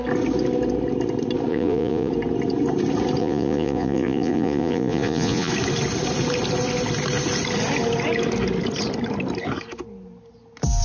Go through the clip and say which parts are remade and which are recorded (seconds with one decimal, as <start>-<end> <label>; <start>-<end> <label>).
0.0-1.5 recorded; 1.5-2.1 remade; 2.1-3.2 recorded; 3.2-5.5 remade; 5.5-10.8 recorded

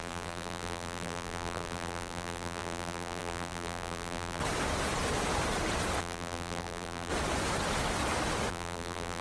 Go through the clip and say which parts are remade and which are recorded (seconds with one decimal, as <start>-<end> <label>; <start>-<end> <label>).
0.0-4.4 remade; 4.4-6.0 recorded; 6.0-7.1 remade; 7.1-8.5 recorded; 8.5-9.2 remade

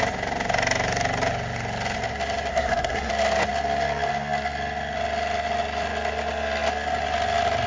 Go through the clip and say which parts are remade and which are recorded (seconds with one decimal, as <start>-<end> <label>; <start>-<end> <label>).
0.0-2.5 recorded; 2.5-3.1 remade; 3.1-7.7 recorded

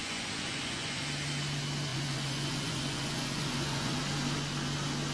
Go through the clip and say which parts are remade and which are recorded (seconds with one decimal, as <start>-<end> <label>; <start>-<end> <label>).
0.0-1.0 remade; 1.0-1.9 recorded; 1.9-4.0 remade; 4.0-5.1 recorded

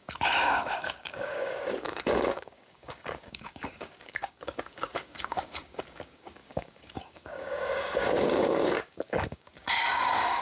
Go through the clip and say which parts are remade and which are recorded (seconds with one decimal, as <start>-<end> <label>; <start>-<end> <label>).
0.0-10.4 remade

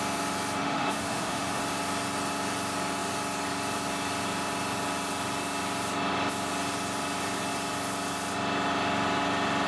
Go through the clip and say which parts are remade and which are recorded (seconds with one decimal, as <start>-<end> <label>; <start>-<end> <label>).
0.0-0.6 recorded; 0.6-1.6 remade; 1.6-9.7 recorded

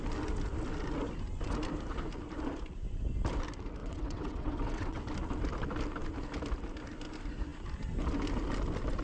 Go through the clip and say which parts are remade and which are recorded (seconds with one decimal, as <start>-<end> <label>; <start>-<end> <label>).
0.0-3.8 recorded; 3.8-5.0 remade; 5.0-9.0 recorded

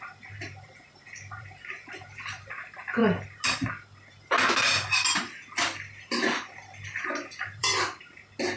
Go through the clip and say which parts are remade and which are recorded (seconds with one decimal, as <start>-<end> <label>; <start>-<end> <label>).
0.0-3.0 remade; 3.0-7.0 recorded; 7.0-7.7 remade; 7.7-8.6 recorded